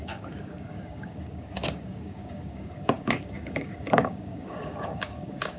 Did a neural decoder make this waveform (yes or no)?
yes